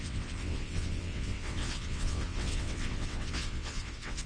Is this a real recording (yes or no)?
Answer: no